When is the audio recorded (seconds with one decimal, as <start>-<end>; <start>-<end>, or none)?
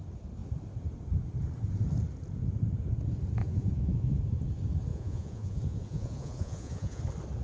0.0-3.4; 4.2-4.9; 7.0-7.4